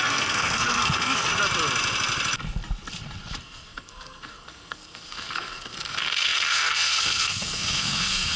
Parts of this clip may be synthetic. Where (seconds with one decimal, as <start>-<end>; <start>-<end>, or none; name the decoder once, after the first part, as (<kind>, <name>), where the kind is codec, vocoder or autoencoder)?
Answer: 0.0-1.3 (codec, SNAC); 3.4-8.4